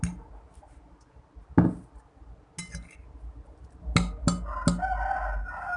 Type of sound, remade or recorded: recorded